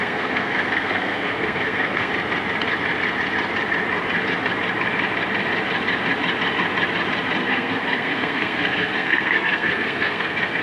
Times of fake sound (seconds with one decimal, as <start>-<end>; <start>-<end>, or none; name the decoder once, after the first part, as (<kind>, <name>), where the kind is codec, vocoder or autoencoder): 0.0-2.1 (codec, SNAC); 7.4-10.6